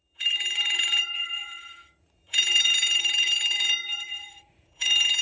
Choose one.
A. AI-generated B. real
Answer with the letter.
A